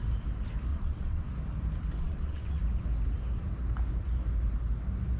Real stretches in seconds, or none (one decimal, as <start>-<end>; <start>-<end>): 0.0-0.7; 1.3-2.0; 2.6-5.2